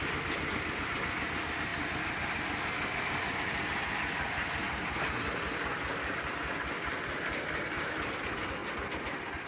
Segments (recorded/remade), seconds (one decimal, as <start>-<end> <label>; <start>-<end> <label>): 0.0-9.5 recorded